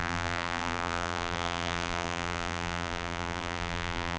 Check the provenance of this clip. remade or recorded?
remade